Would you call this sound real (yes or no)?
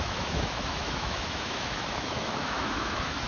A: no